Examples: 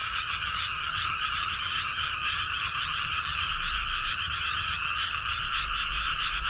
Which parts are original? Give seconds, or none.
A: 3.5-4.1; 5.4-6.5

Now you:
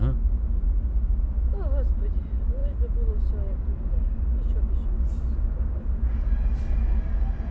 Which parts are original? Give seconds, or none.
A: 0.0-7.5

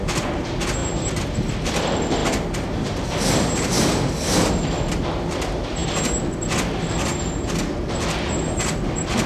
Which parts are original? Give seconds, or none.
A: 0.0-9.3